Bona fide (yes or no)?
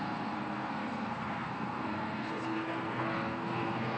no